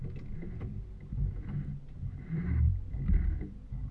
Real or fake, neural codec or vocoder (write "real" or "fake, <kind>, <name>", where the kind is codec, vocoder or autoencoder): real